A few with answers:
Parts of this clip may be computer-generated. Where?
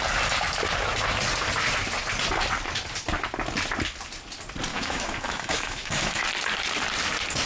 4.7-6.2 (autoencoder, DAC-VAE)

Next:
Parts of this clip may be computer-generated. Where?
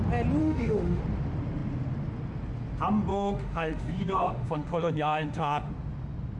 0.4-1.0 (autoencoder, DAC-VAE); 3.1-5.7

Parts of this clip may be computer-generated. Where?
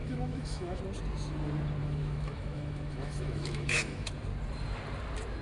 0.0-0.8 (autoencoder, DAC-VAE); 1.8-4.1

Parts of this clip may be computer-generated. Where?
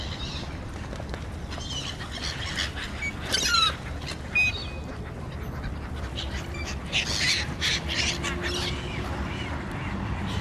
none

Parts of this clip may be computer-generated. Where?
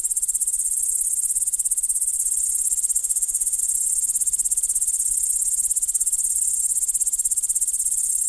3.0-3.6 (autoencoder, DAC-VAE)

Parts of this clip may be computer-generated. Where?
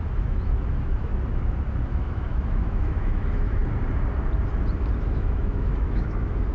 0.0-1.1 (autoencoder, DAC-VAE); 1.9-3.6; 5.0-6.5